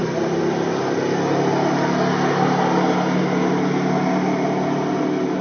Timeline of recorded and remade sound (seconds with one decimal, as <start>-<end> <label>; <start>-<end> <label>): 0.0-5.4 recorded